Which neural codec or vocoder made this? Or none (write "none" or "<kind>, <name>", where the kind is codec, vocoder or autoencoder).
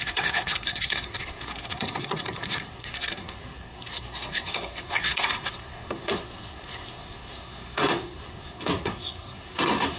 codec, SNAC